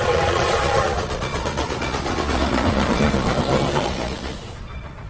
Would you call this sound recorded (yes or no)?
no